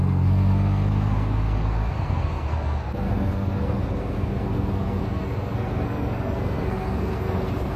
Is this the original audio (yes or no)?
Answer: no